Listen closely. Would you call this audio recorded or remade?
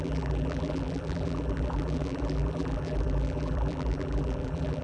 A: remade